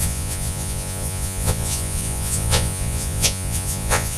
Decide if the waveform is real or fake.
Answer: fake